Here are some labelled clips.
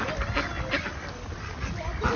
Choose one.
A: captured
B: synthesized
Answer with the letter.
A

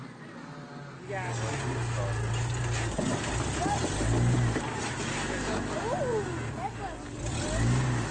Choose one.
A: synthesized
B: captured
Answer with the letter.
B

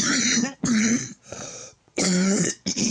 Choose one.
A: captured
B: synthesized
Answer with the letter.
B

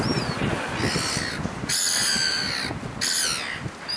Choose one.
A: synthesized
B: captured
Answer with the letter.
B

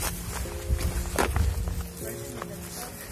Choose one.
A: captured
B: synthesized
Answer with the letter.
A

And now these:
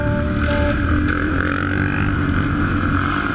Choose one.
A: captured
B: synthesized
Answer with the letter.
A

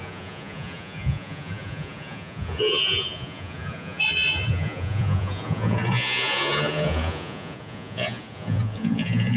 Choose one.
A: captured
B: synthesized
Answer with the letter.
B